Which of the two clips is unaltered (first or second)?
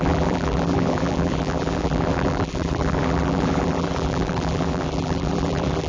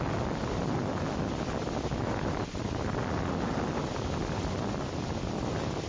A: second